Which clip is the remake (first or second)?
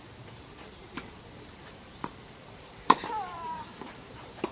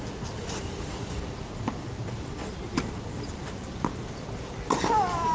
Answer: first